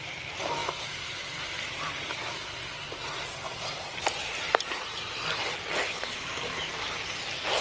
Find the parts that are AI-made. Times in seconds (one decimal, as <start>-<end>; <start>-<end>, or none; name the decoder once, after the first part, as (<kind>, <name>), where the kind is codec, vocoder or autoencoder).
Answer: none